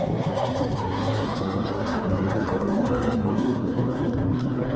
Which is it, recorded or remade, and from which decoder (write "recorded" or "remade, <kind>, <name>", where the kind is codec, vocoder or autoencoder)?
remade, codec, SNAC